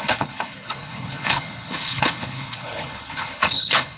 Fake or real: fake